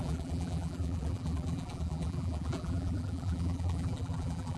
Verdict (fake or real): fake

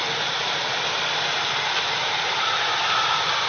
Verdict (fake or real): real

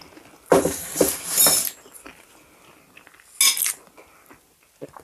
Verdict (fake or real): real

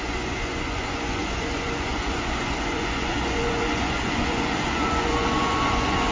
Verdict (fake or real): fake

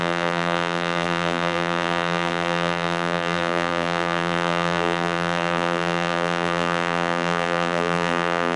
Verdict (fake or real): fake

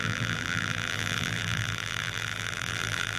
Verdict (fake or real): fake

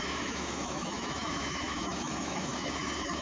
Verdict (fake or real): fake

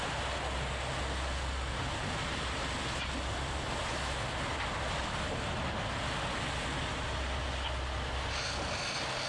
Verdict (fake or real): real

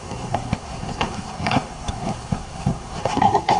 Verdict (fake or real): fake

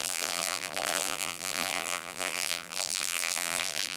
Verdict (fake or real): fake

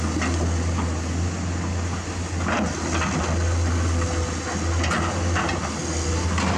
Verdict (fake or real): real